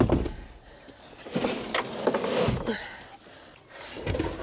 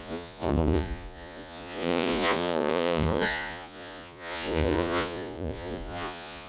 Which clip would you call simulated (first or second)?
second